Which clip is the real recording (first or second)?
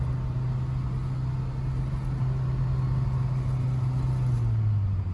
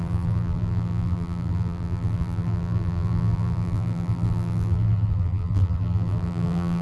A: first